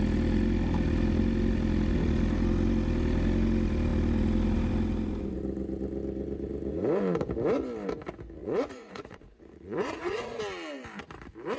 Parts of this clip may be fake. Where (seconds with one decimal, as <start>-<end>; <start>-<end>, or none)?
8.4-10.4